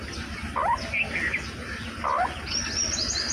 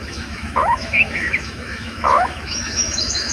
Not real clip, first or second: second